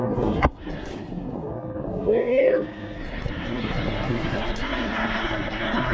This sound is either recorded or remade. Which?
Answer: remade